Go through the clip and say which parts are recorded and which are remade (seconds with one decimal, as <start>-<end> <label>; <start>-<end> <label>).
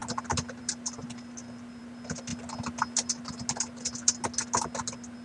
0.0-5.2 recorded